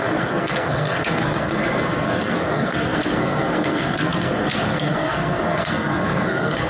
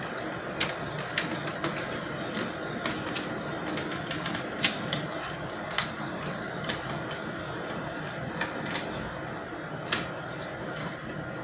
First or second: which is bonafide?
second